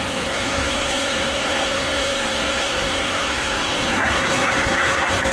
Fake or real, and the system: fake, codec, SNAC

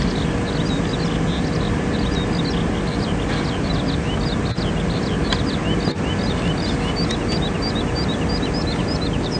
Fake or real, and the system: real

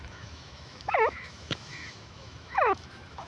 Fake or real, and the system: fake, autoencoder, DAC-VAE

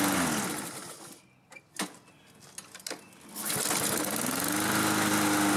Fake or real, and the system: real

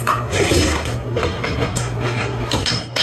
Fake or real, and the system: fake, codec, SNAC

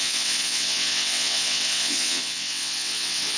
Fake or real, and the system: fake, vocoder, WaveNeXt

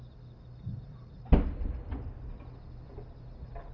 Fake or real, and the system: real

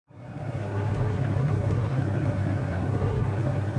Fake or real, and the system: fake, codec, SNAC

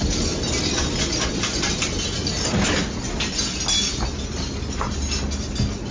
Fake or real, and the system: real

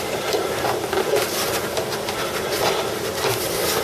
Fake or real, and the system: real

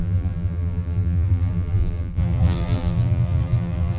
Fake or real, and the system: fake, vocoder, BigVGAN v2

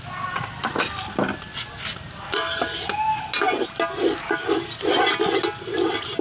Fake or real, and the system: real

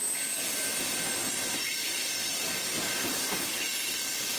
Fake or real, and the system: real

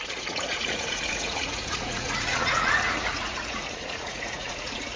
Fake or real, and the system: fake, vocoder, Vocos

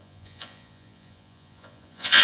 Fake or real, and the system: fake, vocoder, Vocos